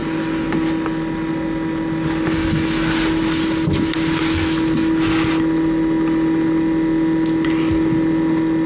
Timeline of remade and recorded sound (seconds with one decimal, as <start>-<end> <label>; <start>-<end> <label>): 0.0-8.7 recorded